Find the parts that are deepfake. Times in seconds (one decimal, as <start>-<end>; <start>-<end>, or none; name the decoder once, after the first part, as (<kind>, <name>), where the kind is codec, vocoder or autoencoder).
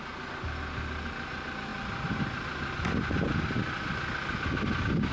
none